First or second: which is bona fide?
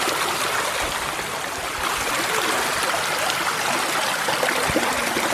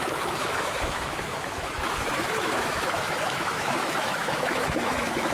first